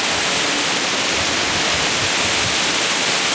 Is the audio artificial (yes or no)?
no